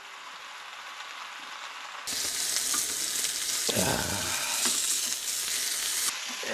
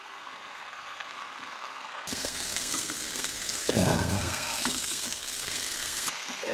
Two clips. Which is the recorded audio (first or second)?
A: first